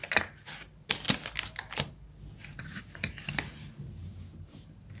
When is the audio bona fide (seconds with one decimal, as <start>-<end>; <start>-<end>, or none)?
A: 0.0-2.4